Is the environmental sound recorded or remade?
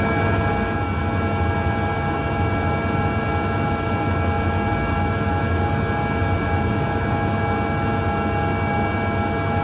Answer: recorded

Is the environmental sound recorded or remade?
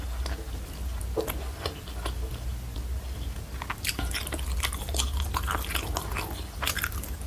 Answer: recorded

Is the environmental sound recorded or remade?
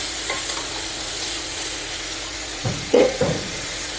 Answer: remade